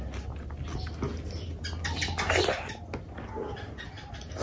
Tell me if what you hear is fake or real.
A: real